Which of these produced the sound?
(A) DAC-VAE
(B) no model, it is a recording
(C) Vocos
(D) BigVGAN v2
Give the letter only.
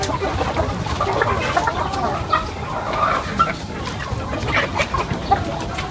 B